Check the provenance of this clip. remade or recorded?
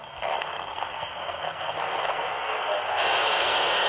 remade